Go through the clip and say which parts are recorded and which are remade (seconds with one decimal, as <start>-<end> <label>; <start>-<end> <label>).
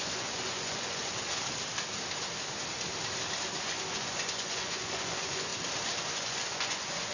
0.0-1.0 remade; 1.0-3.6 recorded; 3.6-5.5 remade; 5.5-6.0 recorded; 6.0-7.1 remade